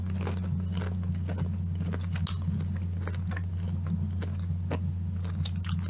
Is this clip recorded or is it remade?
recorded